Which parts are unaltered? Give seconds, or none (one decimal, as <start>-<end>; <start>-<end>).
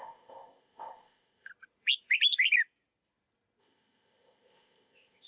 1.5-3.6